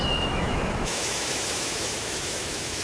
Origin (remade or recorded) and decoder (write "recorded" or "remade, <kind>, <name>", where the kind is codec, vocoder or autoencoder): remade, autoencoder, DAC-VAE